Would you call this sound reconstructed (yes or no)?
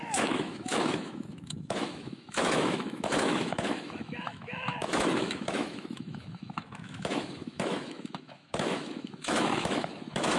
yes